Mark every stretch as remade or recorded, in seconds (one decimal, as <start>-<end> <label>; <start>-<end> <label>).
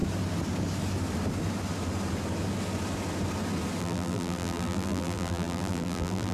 0.0-3.8 recorded; 3.8-6.3 remade